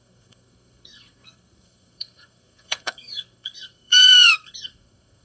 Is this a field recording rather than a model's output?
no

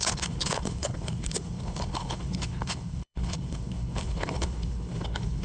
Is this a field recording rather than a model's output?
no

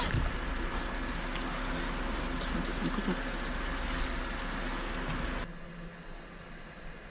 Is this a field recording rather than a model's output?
yes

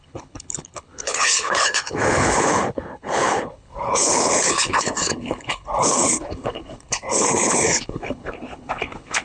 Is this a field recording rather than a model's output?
no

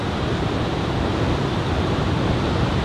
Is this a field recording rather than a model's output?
yes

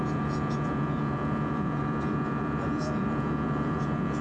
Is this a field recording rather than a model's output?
no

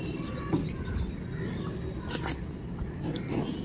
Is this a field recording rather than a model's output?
yes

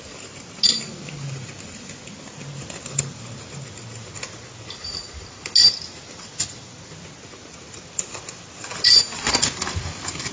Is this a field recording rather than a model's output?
yes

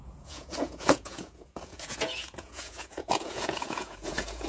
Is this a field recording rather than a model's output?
no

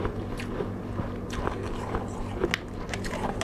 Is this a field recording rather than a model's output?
yes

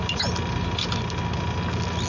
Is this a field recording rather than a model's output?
yes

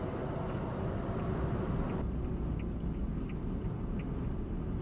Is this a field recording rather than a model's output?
yes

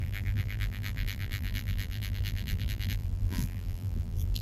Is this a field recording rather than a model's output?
no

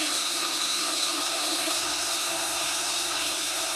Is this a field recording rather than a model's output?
no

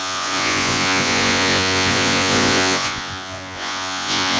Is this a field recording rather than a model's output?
no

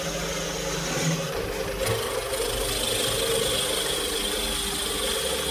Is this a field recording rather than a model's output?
yes